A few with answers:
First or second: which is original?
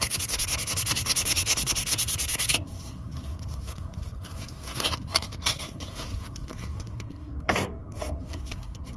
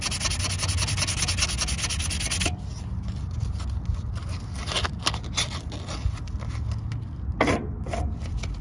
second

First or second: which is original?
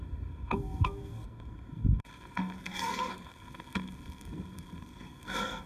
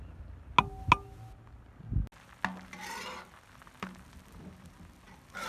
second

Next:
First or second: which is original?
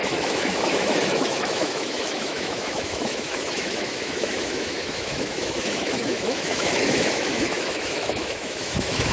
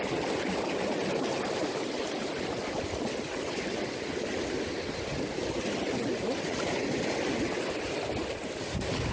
second